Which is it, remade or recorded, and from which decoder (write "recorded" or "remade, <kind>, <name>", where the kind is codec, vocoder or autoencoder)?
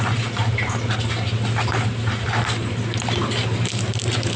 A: recorded